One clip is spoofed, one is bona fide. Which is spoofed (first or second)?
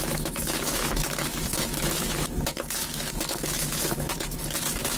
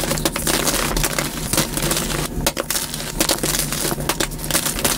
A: first